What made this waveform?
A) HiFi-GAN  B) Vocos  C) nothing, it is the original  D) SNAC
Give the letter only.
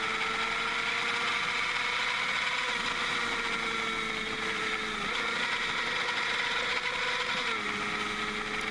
C